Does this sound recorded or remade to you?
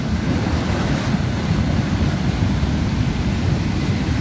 recorded